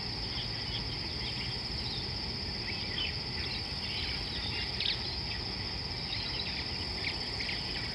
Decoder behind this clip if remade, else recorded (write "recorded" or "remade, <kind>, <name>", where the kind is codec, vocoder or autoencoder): recorded